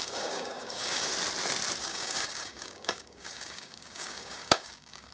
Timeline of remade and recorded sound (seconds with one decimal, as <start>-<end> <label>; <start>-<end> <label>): 0.0-1.1 remade; 1.1-1.8 recorded; 1.8-5.1 remade